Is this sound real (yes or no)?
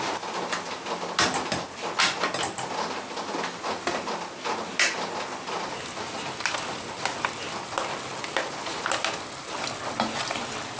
yes